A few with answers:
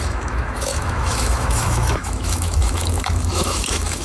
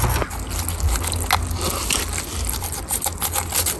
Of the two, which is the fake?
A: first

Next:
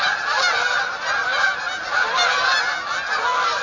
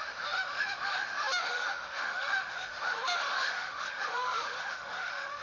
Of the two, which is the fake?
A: second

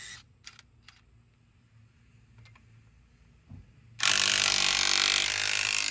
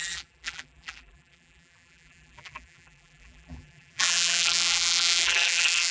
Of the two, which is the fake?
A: second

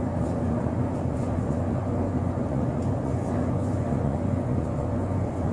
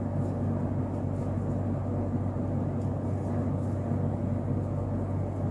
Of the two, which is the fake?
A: first